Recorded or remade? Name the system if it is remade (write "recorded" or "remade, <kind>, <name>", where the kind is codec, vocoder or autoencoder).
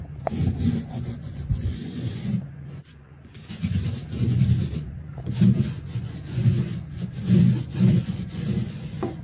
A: remade, vocoder, Vocos